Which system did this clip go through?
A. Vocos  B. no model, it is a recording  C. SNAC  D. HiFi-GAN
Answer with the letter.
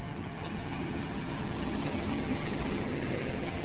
D